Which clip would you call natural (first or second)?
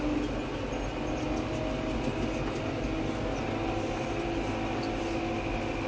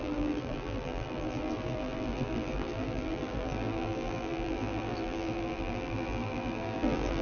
first